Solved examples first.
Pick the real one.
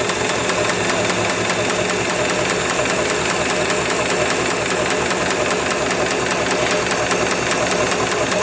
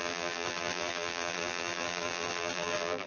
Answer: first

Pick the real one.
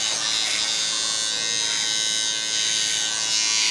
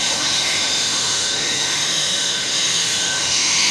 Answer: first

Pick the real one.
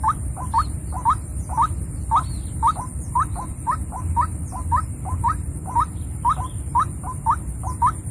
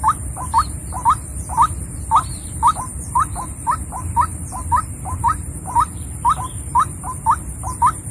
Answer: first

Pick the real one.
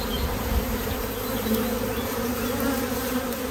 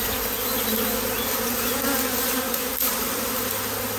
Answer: second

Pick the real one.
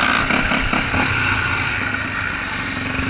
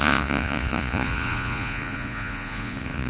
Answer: first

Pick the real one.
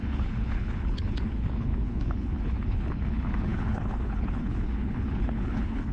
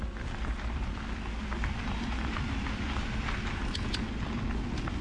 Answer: second